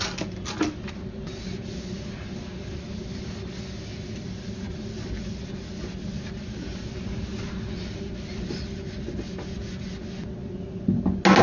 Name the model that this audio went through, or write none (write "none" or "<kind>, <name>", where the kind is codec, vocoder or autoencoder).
none